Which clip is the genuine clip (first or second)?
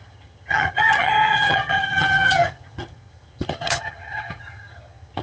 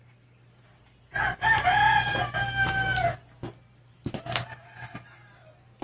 second